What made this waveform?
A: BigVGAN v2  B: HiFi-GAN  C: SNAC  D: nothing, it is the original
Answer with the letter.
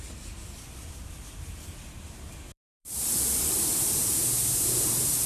A